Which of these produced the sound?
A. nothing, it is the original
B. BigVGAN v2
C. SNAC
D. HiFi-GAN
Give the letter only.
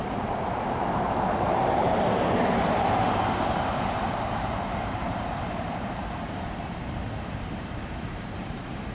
B